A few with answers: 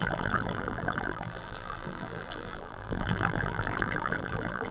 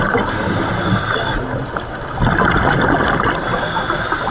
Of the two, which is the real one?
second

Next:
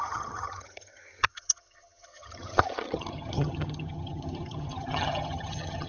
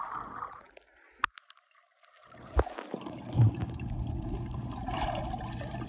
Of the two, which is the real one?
second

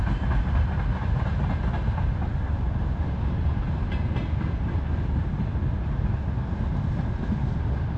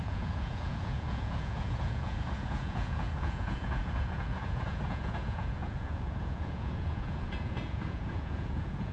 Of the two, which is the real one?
first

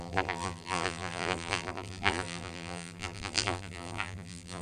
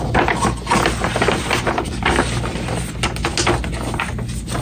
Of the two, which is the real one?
second